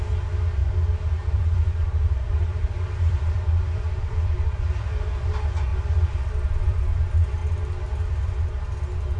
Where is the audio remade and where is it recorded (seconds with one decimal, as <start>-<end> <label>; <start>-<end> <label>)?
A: 0.0-0.6 recorded; 0.6-5.0 remade; 5.0-5.7 recorded; 5.7-6.3 remade; 6.3-9.2 recorded